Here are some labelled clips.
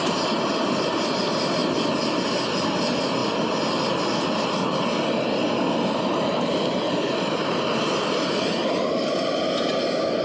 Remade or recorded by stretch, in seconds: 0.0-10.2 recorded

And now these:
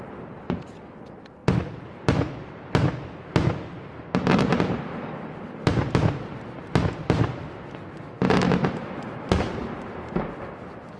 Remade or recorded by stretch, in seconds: 0.0-11.0 recorded

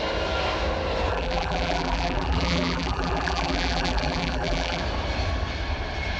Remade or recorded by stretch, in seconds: 0.0-1.1 recorded; 1.1-4.8 remade; 4.8-6.2 recorded

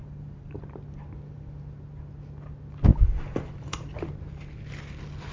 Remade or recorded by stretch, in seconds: 0.0-0.6 remade; 0.6-2.9 recorded; 2.9-4.1 remade; 4.1-5.3 recorded

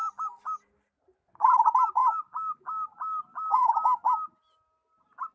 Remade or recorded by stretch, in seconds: 0.0-5.3 recorded